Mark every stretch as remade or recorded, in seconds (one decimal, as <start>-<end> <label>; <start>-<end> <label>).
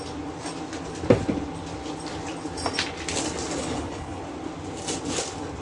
0.0-3.6 recorded; 3.6-4.2 remade; 4.2-5.6 recorded